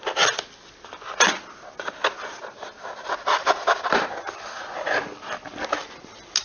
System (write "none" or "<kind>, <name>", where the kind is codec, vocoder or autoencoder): none